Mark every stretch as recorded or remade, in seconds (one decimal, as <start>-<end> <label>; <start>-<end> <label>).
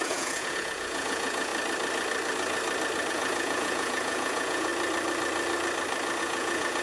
0.0-1.5 remade; 1.5-3.1 recorded; 3.1-4.7 remade; 4.7-6.2 recorded; 6.2-6.8 remade